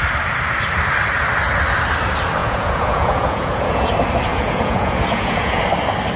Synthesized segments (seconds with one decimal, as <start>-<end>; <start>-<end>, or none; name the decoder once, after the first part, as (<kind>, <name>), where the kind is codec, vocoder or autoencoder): 2.4-3.9 (vocoder, Vocos); 4.3-5.6